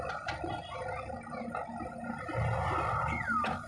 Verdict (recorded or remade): recorded